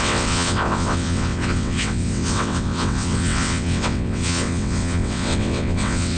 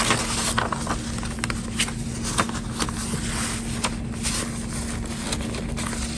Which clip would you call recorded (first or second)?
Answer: second